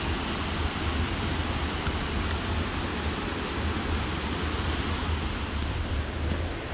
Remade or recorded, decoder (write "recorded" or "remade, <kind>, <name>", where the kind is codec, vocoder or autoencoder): recorded